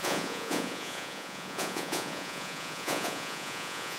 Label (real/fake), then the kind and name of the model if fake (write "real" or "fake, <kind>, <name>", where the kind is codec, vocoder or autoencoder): fake, vocoder, Vocos